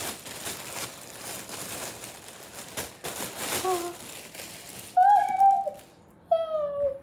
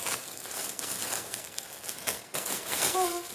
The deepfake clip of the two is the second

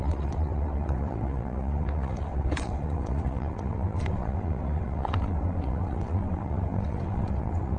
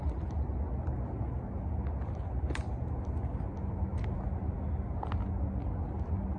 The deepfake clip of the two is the first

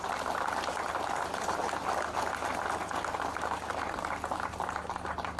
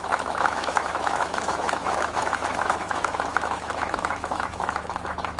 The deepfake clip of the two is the second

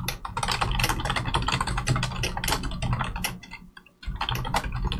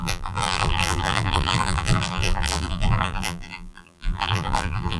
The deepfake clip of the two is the second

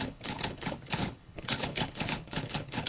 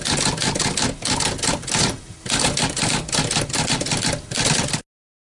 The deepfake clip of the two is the first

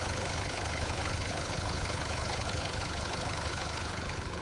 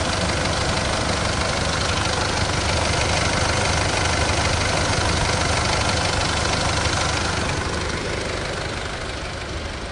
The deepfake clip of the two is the first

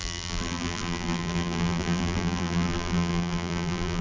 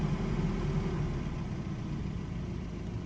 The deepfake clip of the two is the first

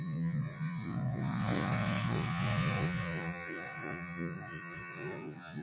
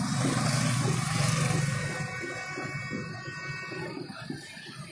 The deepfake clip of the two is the first